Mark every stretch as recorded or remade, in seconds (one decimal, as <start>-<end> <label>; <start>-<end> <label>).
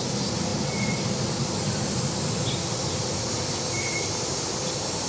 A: 0.0-5.1 recorded